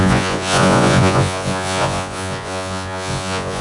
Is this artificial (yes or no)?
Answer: yes